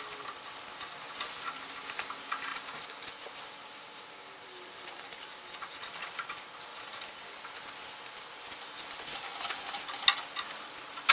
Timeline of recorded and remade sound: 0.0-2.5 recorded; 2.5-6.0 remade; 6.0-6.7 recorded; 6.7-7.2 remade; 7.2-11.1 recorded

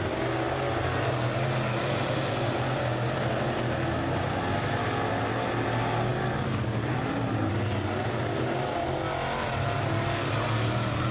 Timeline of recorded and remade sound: 0.0-11.1 recorded